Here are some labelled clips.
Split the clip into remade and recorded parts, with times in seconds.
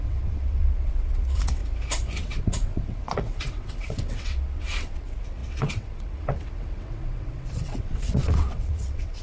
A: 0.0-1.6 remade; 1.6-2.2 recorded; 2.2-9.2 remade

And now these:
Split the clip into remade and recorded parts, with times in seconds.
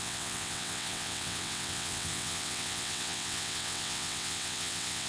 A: 0.0-5.1 remade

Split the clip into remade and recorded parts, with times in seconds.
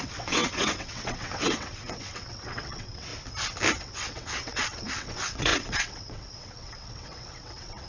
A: 0.0-3.1 remade; 3.1-3.7 recorded; 3.7-7.9 remade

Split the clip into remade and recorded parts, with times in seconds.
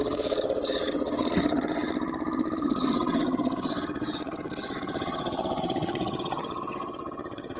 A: 0.0-1.9 remade; 1.9-2.6 recorded; 2.6-7.6 remade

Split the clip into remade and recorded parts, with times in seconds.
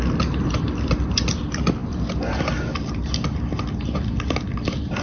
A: 0.0-5.0 recorded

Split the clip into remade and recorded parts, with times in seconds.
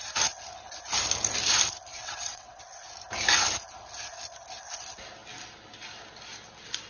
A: 0.0-1.9 recorded; 1.9-2.6 remade; 2.6-6.9 recorded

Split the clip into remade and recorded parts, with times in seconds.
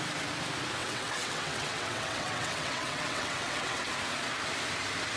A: 0.0-0.8 recorded; 0.8-3.9 remade; 3.9-5.2 recorded